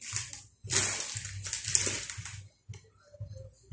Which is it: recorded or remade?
recorded